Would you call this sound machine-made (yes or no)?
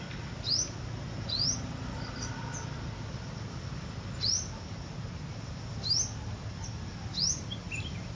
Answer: no